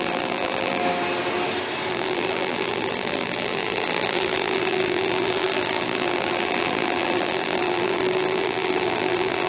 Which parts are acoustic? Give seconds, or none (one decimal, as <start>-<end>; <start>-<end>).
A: 0.8-1.9